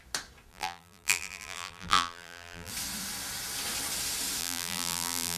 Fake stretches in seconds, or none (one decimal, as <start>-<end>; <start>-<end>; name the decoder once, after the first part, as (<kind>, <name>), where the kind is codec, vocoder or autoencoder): 0.5-2.7 (vocoder, BigVGAN v2); 4.4-5.4